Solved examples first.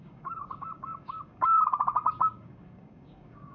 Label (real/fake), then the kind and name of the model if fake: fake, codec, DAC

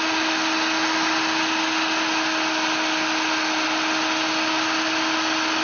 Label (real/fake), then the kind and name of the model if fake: real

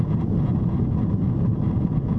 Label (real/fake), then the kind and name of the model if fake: real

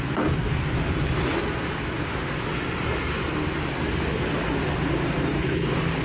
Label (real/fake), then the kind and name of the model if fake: real